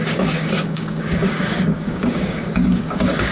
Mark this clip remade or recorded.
remade